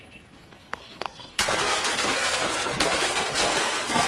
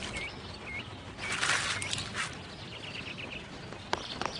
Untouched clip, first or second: second